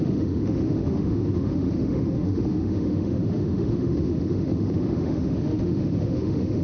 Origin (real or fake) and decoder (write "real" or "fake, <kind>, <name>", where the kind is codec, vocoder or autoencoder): fake, autoencoder, DAC-VAE